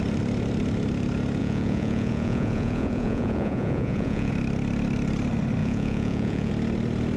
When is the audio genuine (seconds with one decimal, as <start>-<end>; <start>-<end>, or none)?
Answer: 0.0-1.4; 4.3-5.6; 6.5-7.2